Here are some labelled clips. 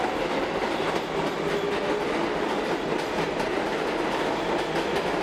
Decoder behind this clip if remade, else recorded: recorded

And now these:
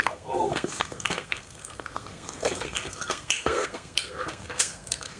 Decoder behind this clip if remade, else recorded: remade, codec, SNAC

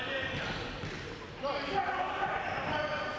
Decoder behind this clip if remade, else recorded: recorded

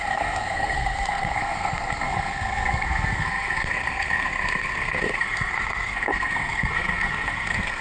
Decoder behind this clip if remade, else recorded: remade, codec, SNAC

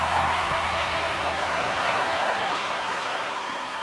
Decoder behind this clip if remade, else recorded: remade, codec, SNAC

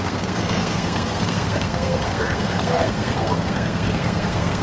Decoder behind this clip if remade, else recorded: remade, codec, SNAC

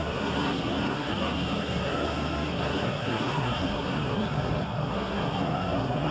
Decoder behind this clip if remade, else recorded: remade, codec, SNAC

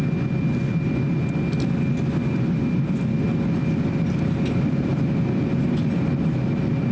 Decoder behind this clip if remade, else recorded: recorded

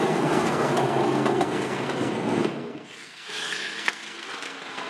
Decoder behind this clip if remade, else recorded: remade, codec, SNAC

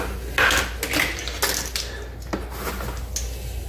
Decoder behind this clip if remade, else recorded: recorded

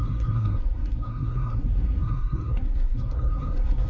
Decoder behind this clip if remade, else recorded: remade, codec, SNAC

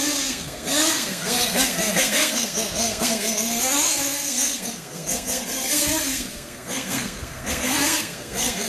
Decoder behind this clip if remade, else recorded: remade, codec, SNAC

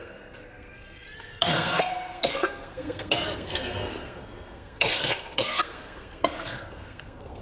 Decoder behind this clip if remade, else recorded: remade, codec, SNAC